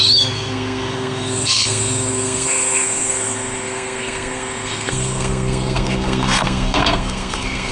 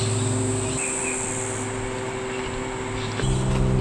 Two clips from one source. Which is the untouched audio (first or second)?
second